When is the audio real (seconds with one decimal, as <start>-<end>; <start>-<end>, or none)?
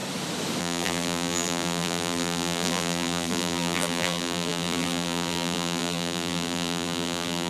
0.0-0.6